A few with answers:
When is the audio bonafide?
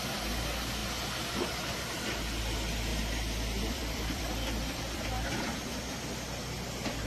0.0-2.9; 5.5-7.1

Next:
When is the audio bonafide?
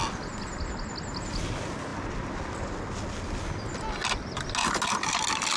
0.0-5.6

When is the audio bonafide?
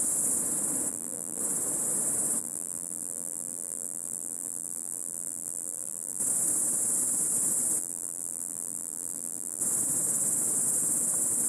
0.0-0.9; 1.4-2.4; 6.2-7.8; 9.6-11.5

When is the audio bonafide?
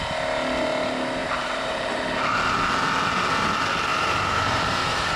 0.0-1.2; 1.9-3.9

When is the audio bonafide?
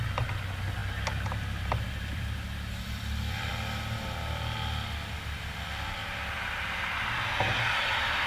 0.0-0.8; 3.5-8.3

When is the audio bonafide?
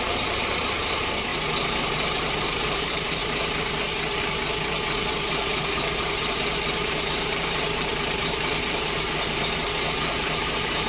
1.3-1.9; 3.2-4.2